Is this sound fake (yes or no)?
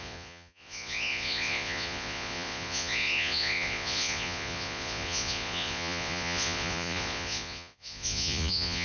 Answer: yes